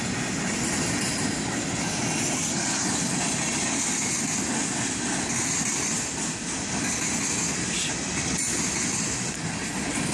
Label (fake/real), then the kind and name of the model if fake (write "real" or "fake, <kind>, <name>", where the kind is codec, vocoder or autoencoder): real